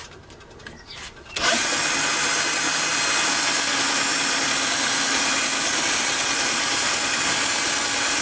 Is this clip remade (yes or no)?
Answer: no